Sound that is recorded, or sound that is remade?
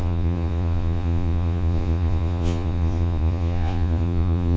remade